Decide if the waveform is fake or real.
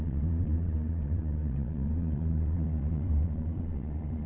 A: fake